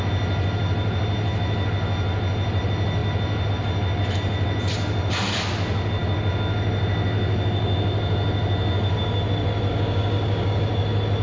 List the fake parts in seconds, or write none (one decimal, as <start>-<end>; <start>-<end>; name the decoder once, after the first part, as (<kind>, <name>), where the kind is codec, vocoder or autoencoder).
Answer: 9.7-10.7 (codec, DAC)